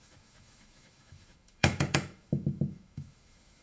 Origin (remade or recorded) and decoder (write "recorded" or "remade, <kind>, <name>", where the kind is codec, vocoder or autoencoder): remade, autoencoder, DAC-VAE